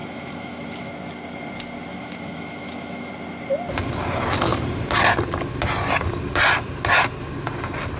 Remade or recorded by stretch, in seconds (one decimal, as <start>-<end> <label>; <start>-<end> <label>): 0.0-0.9 remade; 0.9-1.9 recorded; 1.9-3.1 remade; 3.1-8.0 recorded